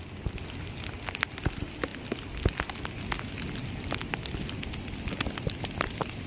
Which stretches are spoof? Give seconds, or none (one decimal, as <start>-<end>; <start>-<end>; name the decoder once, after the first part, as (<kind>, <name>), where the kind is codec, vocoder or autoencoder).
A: none